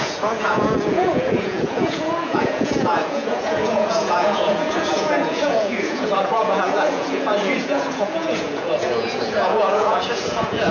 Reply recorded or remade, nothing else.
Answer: remade